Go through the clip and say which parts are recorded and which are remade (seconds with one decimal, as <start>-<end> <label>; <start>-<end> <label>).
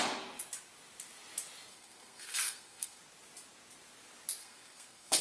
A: 0.0-1.7 recorded; 1.7-3.0 remade; 3.0-4.4 recorded; 4.4-5.2 remade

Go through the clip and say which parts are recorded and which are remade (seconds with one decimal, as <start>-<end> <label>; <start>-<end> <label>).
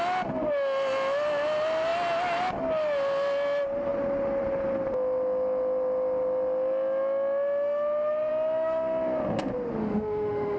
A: 0.0-9.8 recorded; 9.8-10.6 remade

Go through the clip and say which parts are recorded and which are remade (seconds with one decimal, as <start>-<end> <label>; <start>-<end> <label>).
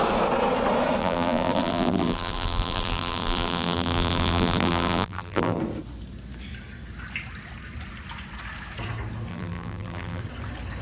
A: 0.0-1.0 recorded; 1.0-5.6 remade; 5.6-9.3 recorded; 9.3-10.2 remade; 10.2-10.8 recorded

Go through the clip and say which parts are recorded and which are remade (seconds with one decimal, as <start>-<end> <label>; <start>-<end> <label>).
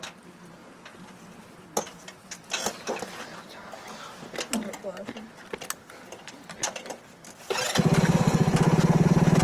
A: 0.0-9.4 recorded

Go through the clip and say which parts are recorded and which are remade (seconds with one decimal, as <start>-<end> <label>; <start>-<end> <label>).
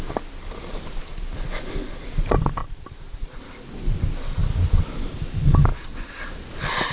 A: 0.0-2.6 recorded; 2.6-3.4 remade; 3.4-6.9 recorded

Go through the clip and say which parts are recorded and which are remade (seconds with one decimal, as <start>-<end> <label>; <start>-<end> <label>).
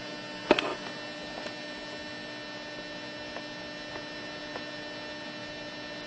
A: 0.0-6.1 recorded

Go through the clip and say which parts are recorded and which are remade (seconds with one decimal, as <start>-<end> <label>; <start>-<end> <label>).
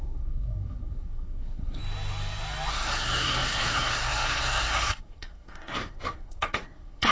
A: 0.0-1.8 remade; 1.8-2.7 recorded; 2.7-7.1 remade